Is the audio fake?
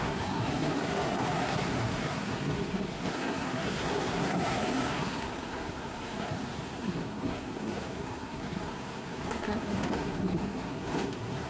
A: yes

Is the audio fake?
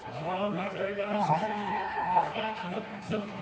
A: yes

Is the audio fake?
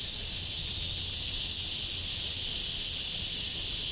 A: no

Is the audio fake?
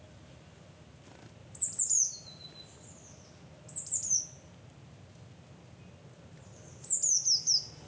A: no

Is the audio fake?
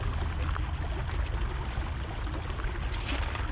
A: no